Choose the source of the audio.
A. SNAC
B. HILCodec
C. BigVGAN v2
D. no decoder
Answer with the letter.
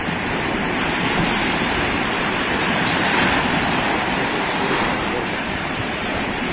C